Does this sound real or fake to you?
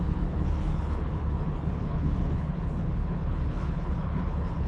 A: fake